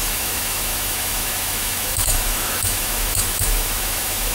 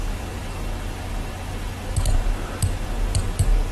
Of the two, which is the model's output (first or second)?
first